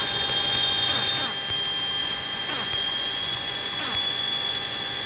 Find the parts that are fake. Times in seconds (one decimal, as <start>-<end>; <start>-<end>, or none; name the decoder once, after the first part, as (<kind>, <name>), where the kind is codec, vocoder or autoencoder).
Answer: 0.0-1.1 (vocoder, Vocos); 2.0-5.1